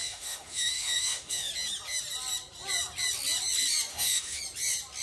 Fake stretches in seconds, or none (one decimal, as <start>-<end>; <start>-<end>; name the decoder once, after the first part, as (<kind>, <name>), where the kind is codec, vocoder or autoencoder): 0.0-1.5 (autoencoder, DAC-VAE); 3.9-4.4